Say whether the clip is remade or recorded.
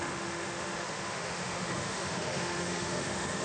remade